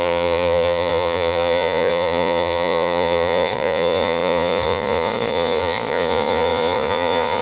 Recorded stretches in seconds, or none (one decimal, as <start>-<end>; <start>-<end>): none